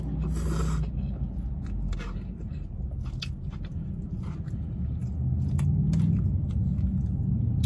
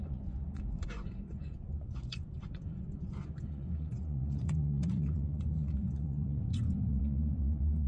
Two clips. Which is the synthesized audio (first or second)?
second